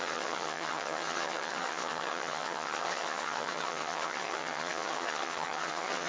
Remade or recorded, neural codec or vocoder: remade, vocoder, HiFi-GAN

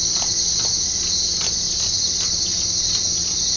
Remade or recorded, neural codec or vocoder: recorded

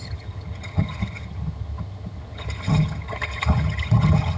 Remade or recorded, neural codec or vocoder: remade, vocoder, HiFi-GAN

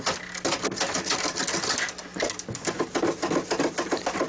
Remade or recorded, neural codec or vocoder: recorded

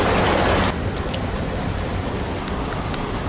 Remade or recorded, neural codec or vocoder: recorded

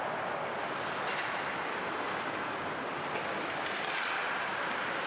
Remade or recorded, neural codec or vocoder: recorded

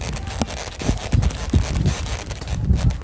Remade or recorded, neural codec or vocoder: recorded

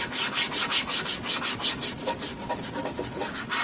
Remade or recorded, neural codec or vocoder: recorded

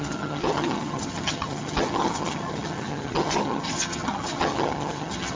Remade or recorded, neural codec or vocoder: remade, vocoder, HiFi-GAN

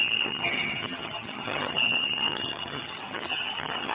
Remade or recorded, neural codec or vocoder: remade, vocoder, HiFi-GAN